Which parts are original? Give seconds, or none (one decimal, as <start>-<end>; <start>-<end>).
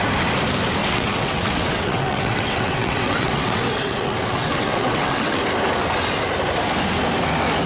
0.0-0.8; 5.4-7.7